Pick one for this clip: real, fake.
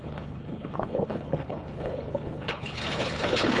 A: fake